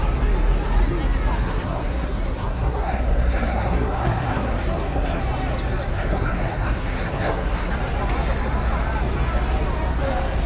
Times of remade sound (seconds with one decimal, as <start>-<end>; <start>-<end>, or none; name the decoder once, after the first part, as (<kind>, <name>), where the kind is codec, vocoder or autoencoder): 1.4-5.2 (codec, SNAC); 5.9-7.7